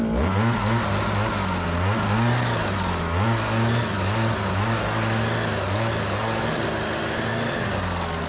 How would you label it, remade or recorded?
recorded